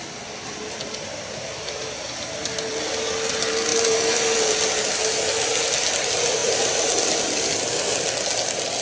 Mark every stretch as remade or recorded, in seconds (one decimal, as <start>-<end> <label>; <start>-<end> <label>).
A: 0.0-8.8 recorded

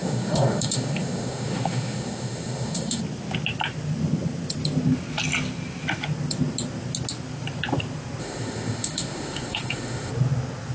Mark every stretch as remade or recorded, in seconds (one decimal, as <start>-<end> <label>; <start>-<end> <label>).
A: 0.0-3.0 remade; 3.0-8.2 recorded; 8.2-10.1 remade; 10.1-10.7 recorded